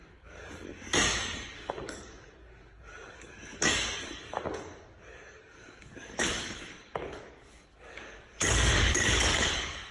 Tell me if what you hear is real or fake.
fake